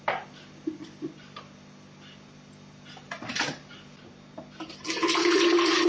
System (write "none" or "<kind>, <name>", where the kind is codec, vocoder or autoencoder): none